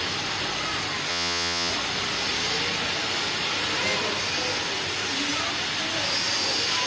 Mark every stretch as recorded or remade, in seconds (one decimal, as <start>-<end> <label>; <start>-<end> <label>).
0.0-1.1 recorded; 1.1-1.7 remade; 1.7-6.9 recorded

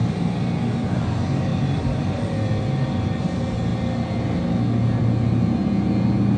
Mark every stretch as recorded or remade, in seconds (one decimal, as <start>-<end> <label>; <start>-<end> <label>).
0.0-1.0 remade; 1.0-1.5 recorded; 1.5-2.3 remade; 2.3-6.4 recorded

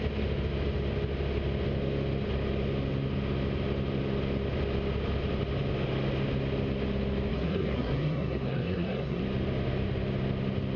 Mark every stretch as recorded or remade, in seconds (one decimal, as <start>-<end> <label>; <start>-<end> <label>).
0.0-7.3 recorded; 7.3-9.2 remade; 9.2-10.8 recorded

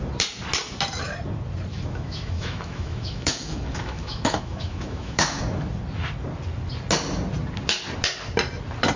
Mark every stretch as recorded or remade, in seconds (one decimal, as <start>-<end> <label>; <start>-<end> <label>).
0.0-1.7 recorded; 1.7-5.4 remade; 5.4-9.0 recorded

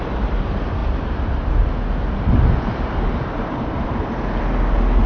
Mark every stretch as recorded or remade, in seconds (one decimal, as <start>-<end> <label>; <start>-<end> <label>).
0.0-5.1 recorded

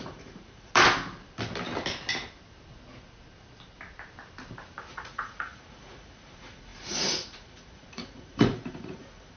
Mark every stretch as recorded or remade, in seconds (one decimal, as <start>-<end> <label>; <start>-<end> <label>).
0.0-0.7 remade; 0.7-4.9 recorded; 4.9-9.4 remade

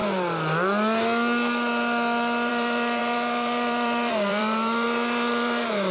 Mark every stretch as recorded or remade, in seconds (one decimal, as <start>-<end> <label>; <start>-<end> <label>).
0.0-2.5 recorded; 2.5-5.9 remade